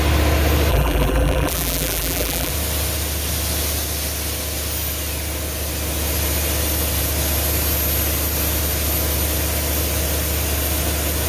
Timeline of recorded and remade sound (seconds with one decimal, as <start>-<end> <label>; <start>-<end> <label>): 0.0-0.7 recorded; 0.7-2.5 remade; 2.5-11.3 recorded

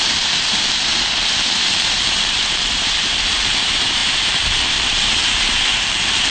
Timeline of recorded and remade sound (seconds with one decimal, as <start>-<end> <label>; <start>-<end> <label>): 0.0-6.3 remade

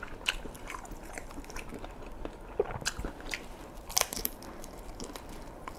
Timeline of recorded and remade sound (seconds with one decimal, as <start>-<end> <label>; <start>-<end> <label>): 0.0-1.7 remade; 1.7-3.4 recorded; 3.4-5.8 remade

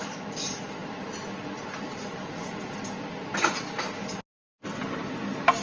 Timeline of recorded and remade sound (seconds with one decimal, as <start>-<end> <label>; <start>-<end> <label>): 0.0-5.6 recorded